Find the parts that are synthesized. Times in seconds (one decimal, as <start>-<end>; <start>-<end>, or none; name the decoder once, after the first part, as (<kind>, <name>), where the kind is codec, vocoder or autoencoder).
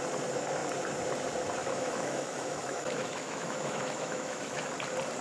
1.6-4.7 (autoencoder, DAC-VAE)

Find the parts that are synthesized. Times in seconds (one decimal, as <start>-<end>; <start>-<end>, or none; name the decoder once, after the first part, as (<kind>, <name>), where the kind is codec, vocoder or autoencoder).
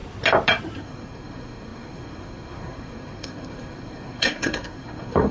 0.8-5.3 (codec, SNAC)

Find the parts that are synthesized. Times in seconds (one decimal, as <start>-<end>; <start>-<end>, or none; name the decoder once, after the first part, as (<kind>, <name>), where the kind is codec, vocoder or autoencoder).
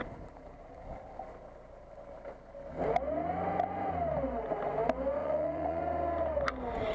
5.2-5.8 (vocoder, Vocos)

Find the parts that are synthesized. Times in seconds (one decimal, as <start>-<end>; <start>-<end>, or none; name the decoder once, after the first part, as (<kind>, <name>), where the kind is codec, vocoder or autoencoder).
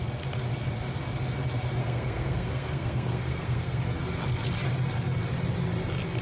1.8-3.8 (codec, SNAC)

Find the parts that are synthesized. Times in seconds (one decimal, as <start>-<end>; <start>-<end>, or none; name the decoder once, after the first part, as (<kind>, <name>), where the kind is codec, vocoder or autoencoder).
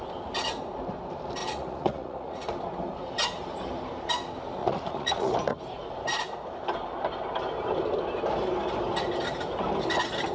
1.4-2.5 (vocoder, Vocos); 4.6-5.6